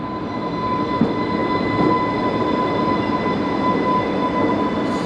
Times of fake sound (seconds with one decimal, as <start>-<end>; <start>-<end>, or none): none